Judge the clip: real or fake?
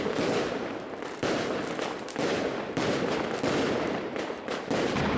fake